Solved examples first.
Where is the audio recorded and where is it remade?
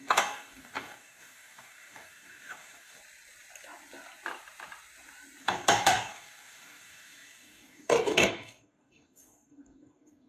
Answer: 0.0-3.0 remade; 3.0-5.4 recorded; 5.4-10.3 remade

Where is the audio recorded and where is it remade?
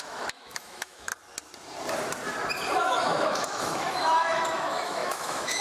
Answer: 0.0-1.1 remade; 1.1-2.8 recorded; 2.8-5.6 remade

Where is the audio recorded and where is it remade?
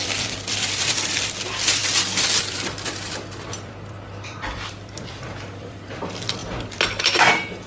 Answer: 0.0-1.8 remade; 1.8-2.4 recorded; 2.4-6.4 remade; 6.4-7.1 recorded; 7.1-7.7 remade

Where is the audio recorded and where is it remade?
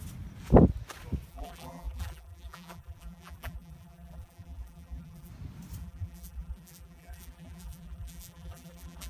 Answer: 0.0-1.3 recorded; 1.3-5.3 remade; 5.3-5.8 recorded; 5.8-9.1 remade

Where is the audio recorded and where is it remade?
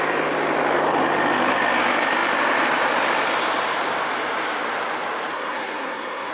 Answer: 0.0-5.3 recorded; 5.3-6.3 remade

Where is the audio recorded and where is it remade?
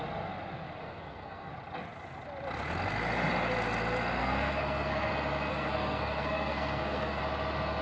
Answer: 0.0-0.8 recorded; 0.8-1.5 remade; 1.5-4.2 recorded; 4.2-5.1 remade; 5.1-5.5 recorded; 5.5-7.2 remade; 7.2-7.8 recorded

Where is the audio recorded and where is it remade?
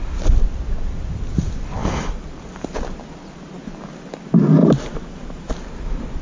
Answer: 0.0-4.6 recorded; 4.6-5.5 remade; 5.5-6.2 recorded